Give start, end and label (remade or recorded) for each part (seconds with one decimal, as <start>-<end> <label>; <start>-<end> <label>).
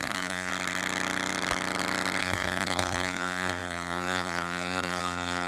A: 0.0-0.5 remade; 0.5-2.2 recorded; 2.2-5.5 remade